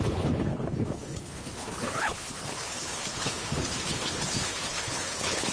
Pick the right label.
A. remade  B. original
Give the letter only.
A